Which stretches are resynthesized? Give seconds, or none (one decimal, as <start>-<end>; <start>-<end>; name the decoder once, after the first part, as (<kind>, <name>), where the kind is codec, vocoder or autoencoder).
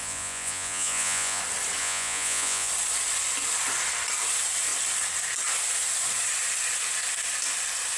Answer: 0.0-1.4 (vocoder, Vocos); 1.8-2.7